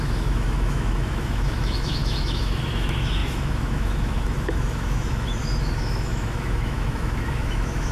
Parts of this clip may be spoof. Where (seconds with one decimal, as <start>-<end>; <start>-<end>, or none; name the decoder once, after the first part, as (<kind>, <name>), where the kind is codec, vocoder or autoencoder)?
0.0-7.9 (autoencoder, DAC-VAE)